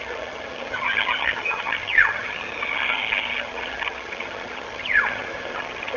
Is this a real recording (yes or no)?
no